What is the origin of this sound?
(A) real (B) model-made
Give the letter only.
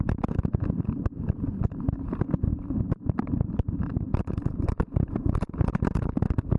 B